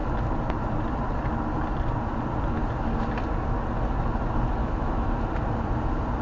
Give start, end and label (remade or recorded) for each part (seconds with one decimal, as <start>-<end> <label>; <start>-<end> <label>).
0.0-4.6 recorded; 4.6-5.1 remade; 5.1-6.2 recorded